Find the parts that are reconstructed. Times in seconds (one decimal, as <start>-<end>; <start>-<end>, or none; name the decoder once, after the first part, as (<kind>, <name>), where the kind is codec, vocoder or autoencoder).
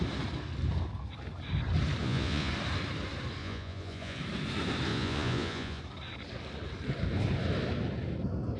2.0-2.5 (vocoder, Vocos); 3.4-4.2; 4.9-5.8